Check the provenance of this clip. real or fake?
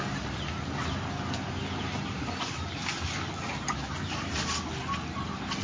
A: real